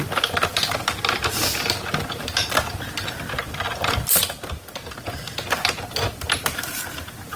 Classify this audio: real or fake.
real